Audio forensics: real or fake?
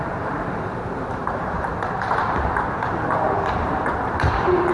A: fake